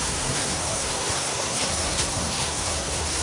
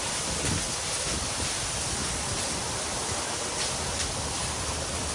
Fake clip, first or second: first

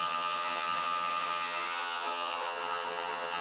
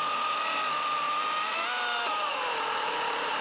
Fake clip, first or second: first